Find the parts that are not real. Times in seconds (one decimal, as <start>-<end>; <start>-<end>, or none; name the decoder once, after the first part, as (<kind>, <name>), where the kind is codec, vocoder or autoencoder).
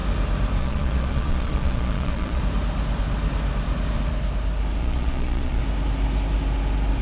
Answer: 0.6-2.4 (vocoder, Vocos); 4.8-5.6